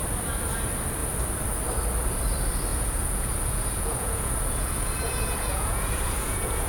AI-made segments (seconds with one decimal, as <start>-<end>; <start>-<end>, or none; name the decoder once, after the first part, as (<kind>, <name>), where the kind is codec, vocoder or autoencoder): 2.7-6.7 (vocoder, Vocos)